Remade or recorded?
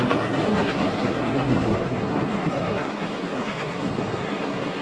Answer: remade